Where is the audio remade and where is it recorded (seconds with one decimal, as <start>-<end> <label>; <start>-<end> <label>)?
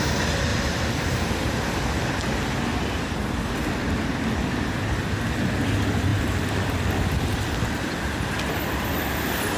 0.0-0.5 recorded; 0.5-1.3 remade; 1.3-9.6 recorded